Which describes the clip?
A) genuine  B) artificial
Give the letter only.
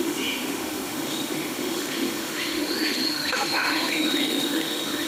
B